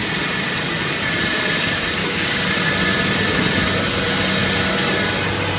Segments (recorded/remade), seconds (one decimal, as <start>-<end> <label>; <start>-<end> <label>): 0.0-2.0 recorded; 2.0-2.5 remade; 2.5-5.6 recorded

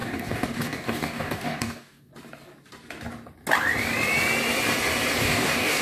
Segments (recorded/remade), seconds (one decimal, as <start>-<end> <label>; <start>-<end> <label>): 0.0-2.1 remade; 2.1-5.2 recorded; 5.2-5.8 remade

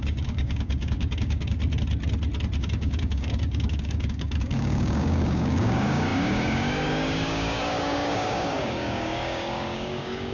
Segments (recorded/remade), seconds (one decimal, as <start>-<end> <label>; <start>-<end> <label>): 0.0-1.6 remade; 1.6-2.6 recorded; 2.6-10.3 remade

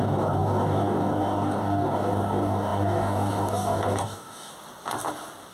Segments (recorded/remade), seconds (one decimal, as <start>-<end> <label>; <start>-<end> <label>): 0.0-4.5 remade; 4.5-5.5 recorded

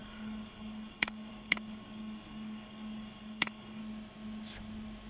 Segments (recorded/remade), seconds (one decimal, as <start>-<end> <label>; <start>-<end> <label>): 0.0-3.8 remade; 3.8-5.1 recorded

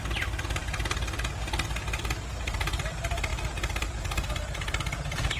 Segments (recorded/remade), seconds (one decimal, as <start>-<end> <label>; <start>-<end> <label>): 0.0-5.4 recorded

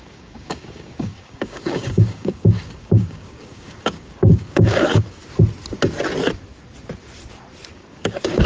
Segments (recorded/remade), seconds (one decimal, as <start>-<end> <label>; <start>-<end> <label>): 0.0-5.2 remade; 5.2-7.7 recorded; 7.7-8.5 remade